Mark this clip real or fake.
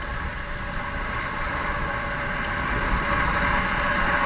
real